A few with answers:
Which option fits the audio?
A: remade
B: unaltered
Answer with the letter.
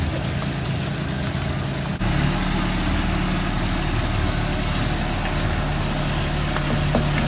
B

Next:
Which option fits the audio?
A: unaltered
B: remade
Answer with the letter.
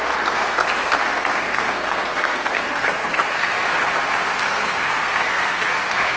B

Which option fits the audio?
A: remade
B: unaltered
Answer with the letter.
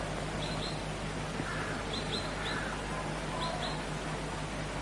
B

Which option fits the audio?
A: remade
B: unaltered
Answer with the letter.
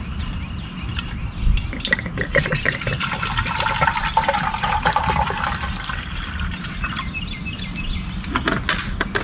B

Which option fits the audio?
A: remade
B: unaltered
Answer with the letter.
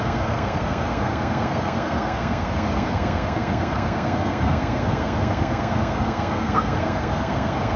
A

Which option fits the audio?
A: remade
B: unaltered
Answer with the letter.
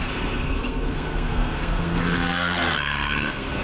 A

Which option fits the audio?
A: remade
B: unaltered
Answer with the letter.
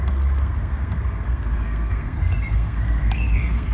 A